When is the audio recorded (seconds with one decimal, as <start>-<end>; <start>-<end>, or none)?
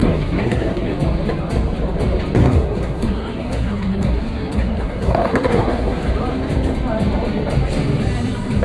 0.9-2.4; 6.1-8.6